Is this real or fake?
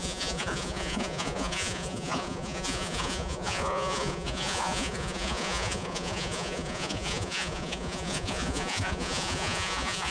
fake